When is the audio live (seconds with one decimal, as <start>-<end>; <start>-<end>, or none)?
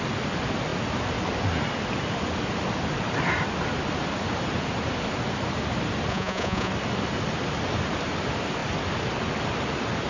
0.0-6.1; 6.7-10.1